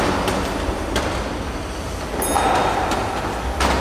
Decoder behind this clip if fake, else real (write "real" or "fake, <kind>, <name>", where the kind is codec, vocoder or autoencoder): real